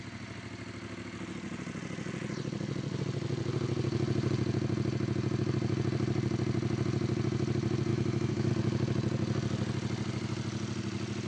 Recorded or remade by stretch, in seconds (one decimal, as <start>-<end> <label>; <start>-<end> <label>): 0.0-7.9 recorded; 7.9-8.5 remade; 8.5-11.3 recorded